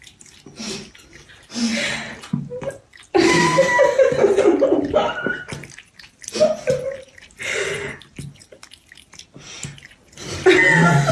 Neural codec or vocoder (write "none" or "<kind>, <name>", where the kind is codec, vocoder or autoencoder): none